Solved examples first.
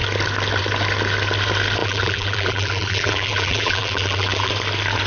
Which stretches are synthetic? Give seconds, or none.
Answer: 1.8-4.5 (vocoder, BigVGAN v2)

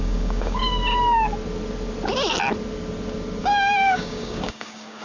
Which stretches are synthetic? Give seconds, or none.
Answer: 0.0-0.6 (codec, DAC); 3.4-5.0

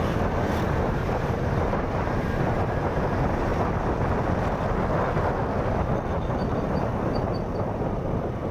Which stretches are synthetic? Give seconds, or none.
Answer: 0.0-3.5 (vocoder, BigVGAN v2); 6.1-8.5

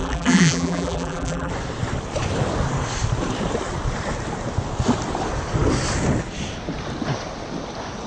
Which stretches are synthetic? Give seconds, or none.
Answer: 0.0-1.5 (vocoder, BigVGAN v2)

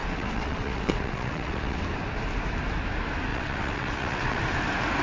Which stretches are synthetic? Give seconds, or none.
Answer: 0.0-1.8 (vocoder, WaveNeXt); 3.3-4.4